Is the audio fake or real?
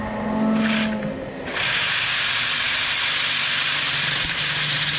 real